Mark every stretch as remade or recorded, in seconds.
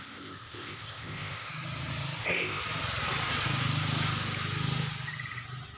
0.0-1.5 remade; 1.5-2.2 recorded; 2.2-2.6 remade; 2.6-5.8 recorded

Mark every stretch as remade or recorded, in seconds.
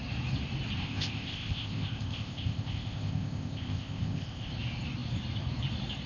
0.0-0.8 recorded; 0.8-4.5 remade; 4.5-6.1 recorded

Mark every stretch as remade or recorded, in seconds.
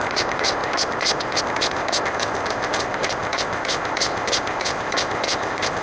0.0-5.8 remade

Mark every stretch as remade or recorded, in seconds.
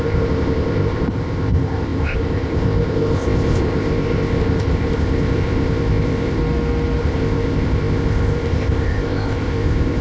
0.0-6.4 remade; 6.4-7.0 recorded; 7.0-10.0 remade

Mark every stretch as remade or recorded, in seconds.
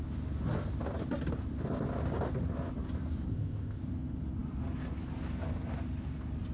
0.0-3.3 recorded; 3.3-3.8 remade; 3.8-6.5 recorded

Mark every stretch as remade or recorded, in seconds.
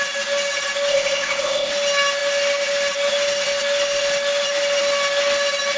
0.0-0.9 recorded; 0.9-1.7 remade; 1.7-5.8 recorded